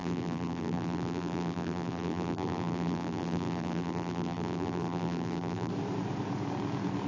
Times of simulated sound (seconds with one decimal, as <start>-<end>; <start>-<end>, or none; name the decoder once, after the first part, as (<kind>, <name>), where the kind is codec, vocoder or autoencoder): 0.0-5.7 (vocoder, BigVGAN v2)